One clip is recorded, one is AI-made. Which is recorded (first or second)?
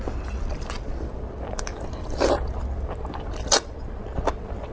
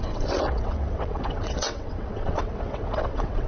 first